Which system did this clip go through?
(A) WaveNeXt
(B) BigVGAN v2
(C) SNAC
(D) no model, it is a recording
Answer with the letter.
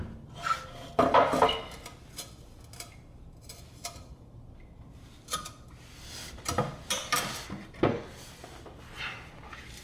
D